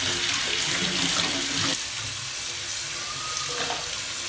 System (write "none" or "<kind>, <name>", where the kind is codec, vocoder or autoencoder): none